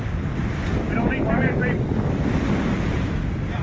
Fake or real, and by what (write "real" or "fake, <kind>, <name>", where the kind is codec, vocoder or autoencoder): real